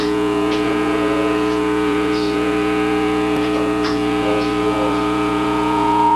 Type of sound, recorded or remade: remade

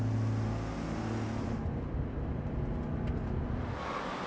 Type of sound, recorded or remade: recorded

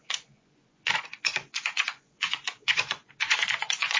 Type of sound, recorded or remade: remade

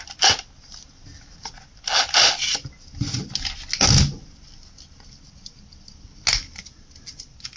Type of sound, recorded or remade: recorded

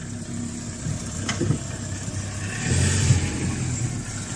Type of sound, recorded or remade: recorded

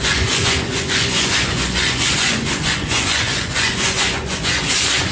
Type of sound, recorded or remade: remade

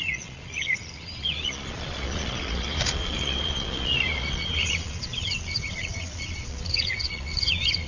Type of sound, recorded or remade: remade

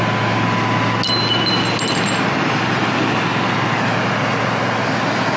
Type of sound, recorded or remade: recorded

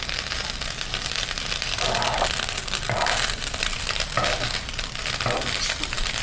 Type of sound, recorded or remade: recorded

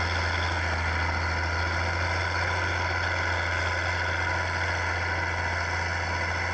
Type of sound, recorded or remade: recorded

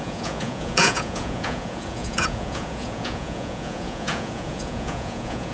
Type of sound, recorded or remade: remade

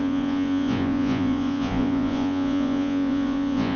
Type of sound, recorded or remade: remade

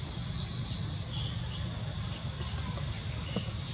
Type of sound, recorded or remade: recorded